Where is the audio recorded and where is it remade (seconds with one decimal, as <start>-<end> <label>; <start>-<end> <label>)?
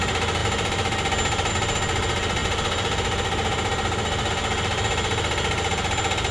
0.0-6.3 recorded